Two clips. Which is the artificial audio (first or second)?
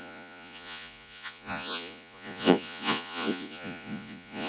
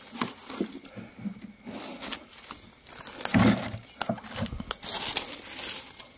first